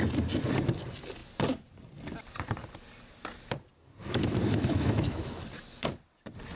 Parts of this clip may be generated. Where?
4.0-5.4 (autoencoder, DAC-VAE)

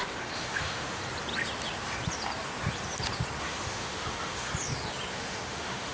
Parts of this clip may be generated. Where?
0.0-1.0 (autoencoder, DAC-VAE); 3.4-4.5; 5.1-5.9

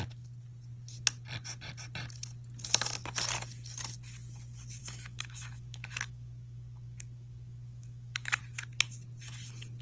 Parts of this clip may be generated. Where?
4.8-8.4 (autoencoder, DAC-VAE)

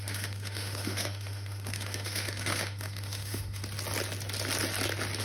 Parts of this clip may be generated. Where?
0.0-3.6 (autoencoder, DAC-VAE)

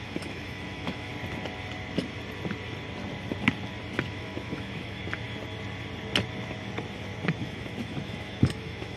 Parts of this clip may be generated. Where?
0.0-1.1 (autoencoder, DAC-VAE); 4.1-5.0; 7.4-9.0